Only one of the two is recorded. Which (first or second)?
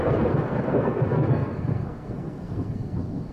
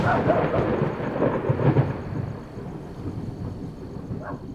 second